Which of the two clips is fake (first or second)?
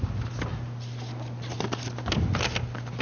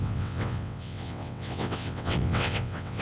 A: second